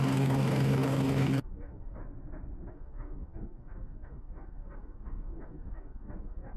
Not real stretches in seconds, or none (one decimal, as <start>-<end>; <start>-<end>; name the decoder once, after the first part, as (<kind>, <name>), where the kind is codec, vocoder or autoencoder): 0.0-2.0 (codec, DAC); 2.7-6.6